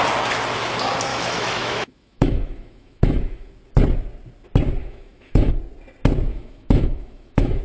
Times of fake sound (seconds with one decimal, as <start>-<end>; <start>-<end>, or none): 1.1-3.5; 4.8-5.6; 6.3-7.6